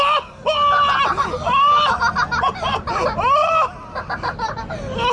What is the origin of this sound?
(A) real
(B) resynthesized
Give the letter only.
A